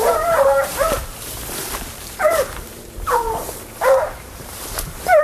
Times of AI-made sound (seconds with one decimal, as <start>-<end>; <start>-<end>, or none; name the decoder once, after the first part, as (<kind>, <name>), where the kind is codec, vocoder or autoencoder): 0.0-1.0 (vocoder, BigVGAN v2); 1.7-5.2